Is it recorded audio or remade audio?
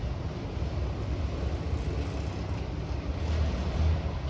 recorded